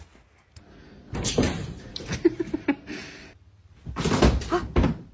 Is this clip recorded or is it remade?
recorded